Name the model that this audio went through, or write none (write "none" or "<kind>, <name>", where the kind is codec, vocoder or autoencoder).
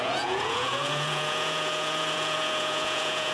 vocoder, Vocos